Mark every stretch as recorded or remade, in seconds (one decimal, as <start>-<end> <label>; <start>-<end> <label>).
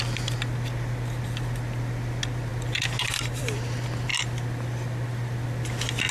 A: 0.0-6.1 recorded